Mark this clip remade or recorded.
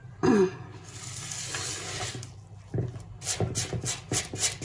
recorded